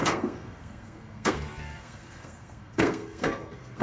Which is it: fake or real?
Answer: fake